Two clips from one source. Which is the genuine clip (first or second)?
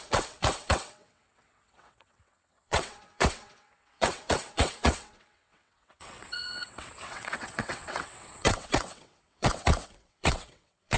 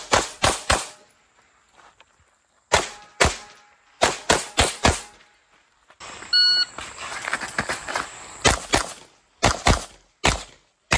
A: second